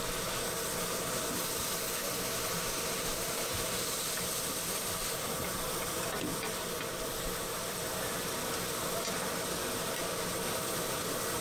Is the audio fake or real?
real